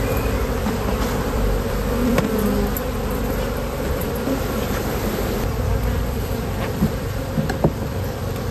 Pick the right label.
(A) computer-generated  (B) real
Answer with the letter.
A